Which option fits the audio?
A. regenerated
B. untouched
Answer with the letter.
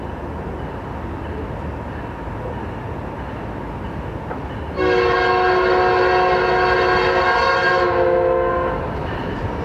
B